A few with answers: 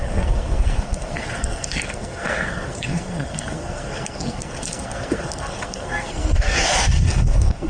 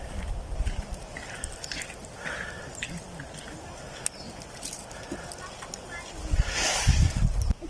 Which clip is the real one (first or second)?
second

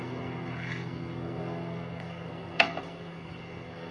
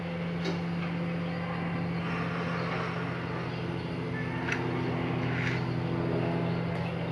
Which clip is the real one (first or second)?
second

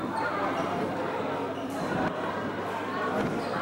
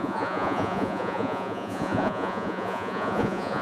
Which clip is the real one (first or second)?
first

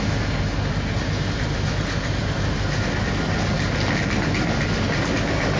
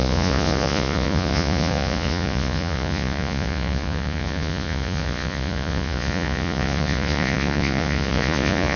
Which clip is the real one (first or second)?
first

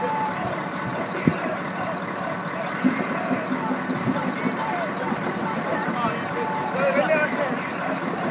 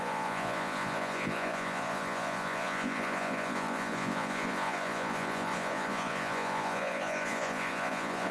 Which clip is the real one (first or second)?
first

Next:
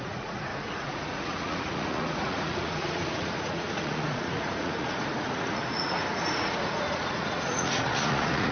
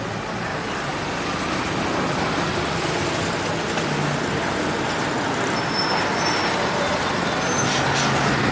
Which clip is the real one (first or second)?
second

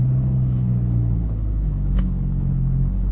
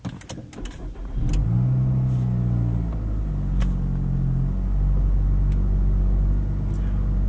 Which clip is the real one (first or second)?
second